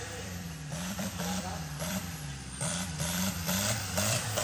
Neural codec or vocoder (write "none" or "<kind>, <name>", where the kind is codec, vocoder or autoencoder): vocoder, BigVGAN v2